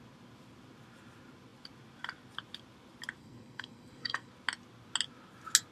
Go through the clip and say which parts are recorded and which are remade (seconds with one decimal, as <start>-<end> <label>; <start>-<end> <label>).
0.0-3.2 recorded; 3.2-4.3 remade; 4.3-5.7 recorded